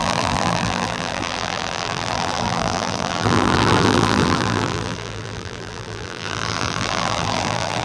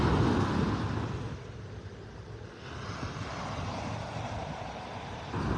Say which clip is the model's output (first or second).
first